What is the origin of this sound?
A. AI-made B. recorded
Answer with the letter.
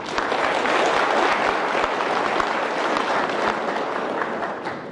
B